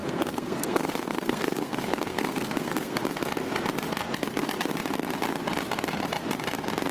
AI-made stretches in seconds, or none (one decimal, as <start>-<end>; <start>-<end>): 0.0-3.0